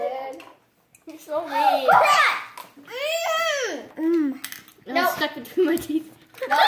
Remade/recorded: recorded